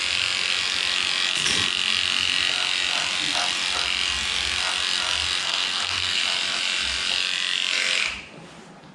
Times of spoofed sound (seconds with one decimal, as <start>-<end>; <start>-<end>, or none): 5.4-6.2